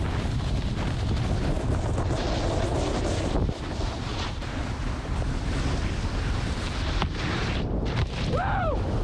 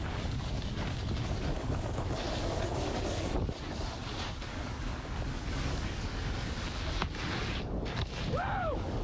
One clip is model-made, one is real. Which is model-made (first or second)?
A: second